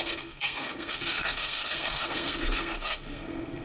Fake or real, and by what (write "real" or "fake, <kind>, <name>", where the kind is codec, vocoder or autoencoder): fake, codec, SNAC